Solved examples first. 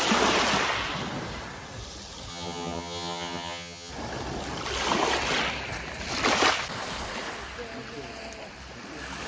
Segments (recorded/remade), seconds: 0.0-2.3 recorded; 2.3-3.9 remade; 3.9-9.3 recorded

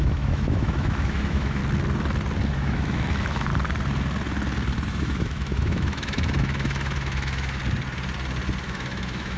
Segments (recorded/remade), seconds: 0.0-1.6 remade; 1.6-2.5 recorded; 2.5-3.5 remade; 3.5-4.9 recorded; 4.9-7.6 remade; 7.6-8.6 recorded; 8.6-9.4 remade

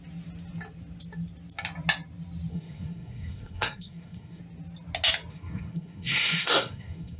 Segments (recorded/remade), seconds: 0.0-2.5 recorded; 2.5-4.4 remade; 4.4-5.3 recorded; 5.3-7.2 remade

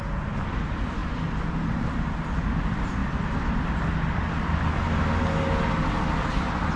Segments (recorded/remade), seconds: 0.0-6.8 recorded

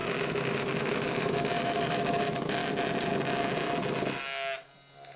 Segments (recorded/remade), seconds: 0.0-2.6 remade; 2.6-5.2 recorded

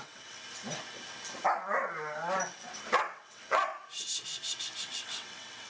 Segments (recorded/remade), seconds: 0.0-0.4 remade; 0.4-3.0 recorded; 3.0-3.7 remade; 3.7-4.8 recorded; 4.8-5.7 remade